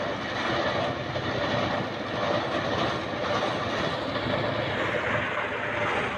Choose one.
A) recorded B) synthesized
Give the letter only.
A